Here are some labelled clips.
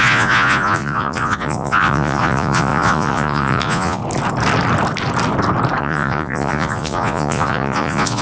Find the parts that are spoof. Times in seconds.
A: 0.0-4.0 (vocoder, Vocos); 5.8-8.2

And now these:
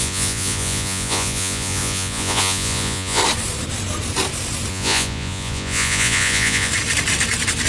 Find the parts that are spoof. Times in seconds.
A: 0.0-3.2 (vocoder, Vocos); 4.7-6.7

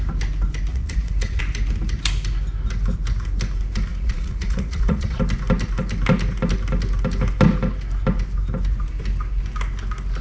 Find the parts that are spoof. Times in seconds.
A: 0.7-1.4 (vocoder, Vocos); 3.9-5.2

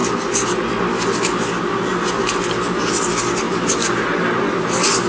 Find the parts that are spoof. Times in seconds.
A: none

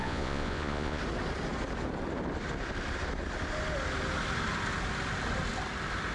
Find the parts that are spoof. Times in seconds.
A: 0.0-1.0 (vocoder, Vocos)

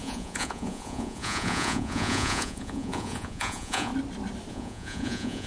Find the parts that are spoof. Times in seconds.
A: 0.0-3.9 (vocoder, Vocos); 4.5-5.5

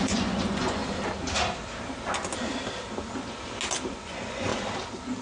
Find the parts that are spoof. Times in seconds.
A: 0.0-0.8 (vocoder, Vocos); 3.9-4.5